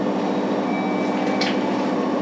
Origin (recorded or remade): recorded